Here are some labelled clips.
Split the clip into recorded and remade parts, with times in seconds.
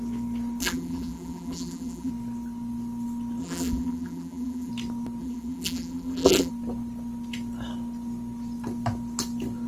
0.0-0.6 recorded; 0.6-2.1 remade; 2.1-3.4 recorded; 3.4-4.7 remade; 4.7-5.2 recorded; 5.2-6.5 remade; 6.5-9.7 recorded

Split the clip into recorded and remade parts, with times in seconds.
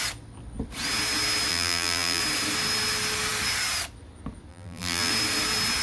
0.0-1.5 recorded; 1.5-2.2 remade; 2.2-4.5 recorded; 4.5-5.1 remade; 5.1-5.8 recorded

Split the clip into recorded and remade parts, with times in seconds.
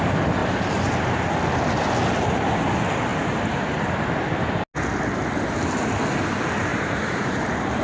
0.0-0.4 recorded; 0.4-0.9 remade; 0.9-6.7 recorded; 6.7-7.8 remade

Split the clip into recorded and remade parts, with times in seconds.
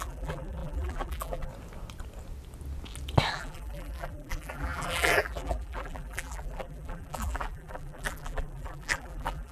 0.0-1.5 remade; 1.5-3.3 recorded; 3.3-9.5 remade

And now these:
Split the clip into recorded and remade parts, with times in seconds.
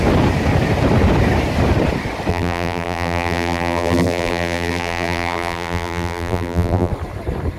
0.0-2.3 recorded; 2.3-6.9 remade; 6.9-7.6 recorded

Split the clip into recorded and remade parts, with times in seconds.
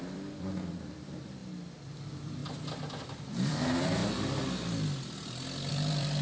0.0-1.4 remade; 1.4-2.0 recorded; 2.0-2.4 remade; 2.4-3.0 recorded; 3.0-4.0 remade; 4.0-5.7 recorded; 5.7-6.2 remade